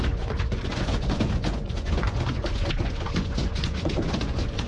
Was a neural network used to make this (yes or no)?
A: yes